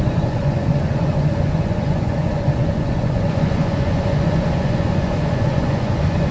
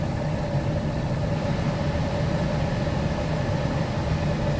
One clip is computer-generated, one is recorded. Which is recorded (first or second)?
second